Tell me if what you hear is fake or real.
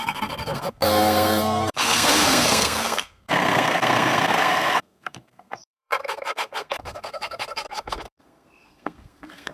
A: fake